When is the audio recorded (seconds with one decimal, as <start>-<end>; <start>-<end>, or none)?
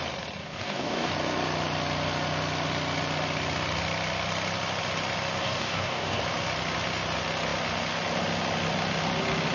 0.0-0.4; 1.1-5.4; 6.2-9.5